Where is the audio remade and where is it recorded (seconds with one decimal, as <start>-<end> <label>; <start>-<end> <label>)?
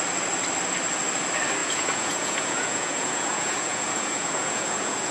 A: 0.0-1.6 recorded; 1.6-5.1 remade